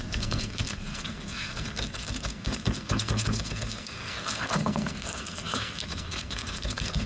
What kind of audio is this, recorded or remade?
remade